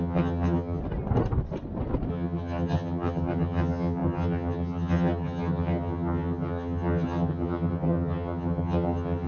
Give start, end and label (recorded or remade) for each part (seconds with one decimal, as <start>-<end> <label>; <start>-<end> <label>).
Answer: 0.0-0.8 remade; 0.8-2.1 recorded; 2.1-9.3 remade